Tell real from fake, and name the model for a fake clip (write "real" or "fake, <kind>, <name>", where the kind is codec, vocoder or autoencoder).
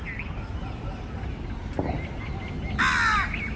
real